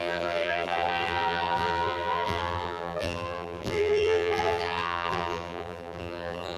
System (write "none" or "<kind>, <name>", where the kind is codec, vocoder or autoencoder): vocoder, BigVGAN v2